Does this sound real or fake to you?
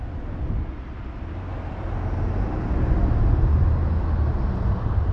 real